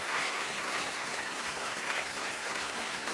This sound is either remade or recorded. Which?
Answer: remade